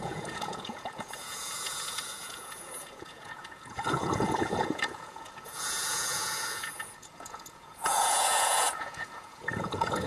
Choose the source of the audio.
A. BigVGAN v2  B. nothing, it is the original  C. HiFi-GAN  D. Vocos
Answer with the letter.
D